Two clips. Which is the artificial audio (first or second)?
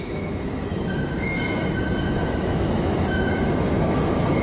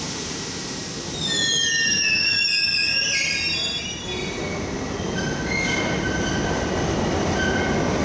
first